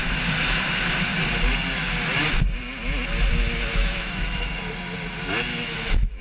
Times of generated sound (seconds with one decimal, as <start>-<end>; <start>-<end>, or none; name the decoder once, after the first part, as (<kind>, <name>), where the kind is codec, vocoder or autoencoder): 3.7-4.5 (autoencoder, DAC-VAE); 5.5-6.2